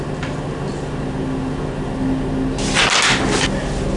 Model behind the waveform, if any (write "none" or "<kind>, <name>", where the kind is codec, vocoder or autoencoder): none